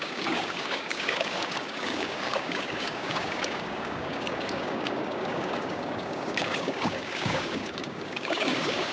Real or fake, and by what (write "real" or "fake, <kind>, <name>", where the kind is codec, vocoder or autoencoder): fake, codec, DAC